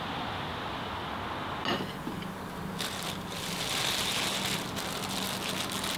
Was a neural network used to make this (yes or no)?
no